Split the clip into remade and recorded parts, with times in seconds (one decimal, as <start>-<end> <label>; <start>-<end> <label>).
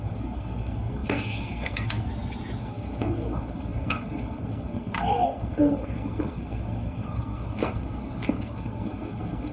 0.0-2.1 remade; 2.1-2.6 recorded; 2.6-9.5 remade